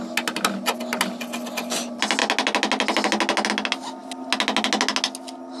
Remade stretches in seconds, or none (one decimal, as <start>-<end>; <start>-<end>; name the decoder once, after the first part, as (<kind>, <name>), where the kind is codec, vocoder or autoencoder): none